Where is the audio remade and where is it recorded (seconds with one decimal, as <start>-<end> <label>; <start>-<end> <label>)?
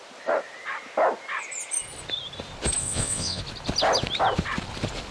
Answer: 0.0-2.8 recorded; 2.8-3.4 remade; 3.4-5.1 recorded